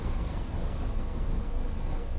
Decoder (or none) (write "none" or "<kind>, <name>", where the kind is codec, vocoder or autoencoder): codec, SNAC